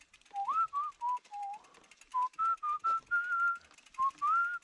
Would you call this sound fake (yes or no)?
no